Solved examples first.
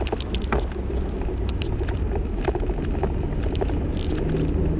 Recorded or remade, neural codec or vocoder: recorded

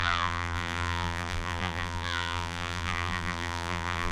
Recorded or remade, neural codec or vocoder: remade, vocoder, BigVGAN v2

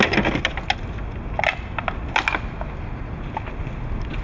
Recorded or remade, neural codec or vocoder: recorded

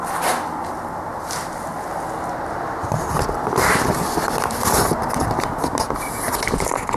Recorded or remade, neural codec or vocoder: recorded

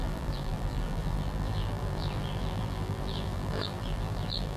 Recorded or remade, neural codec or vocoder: remade, vocoder, BigVGAN v2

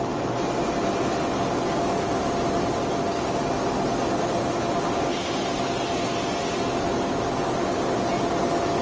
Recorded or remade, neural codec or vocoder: recorded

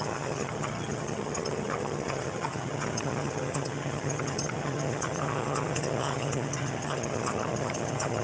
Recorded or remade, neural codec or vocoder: remade, vocoder, HiFi-GAN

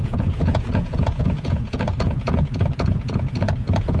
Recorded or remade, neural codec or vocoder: remade, vocoder, Vocos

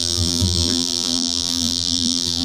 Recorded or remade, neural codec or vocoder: remade, vocoder, BigVGAN v2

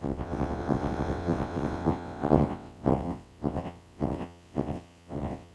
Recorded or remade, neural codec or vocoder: remade, vocoder, WaveNeXt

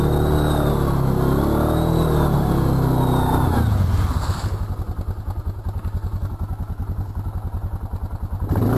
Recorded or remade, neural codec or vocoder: recorded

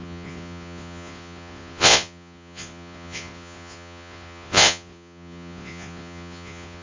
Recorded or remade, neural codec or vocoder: remade, vocoder, Vocos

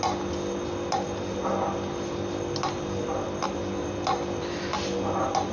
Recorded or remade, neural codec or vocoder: recorded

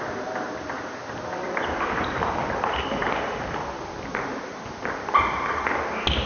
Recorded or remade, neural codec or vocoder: recorded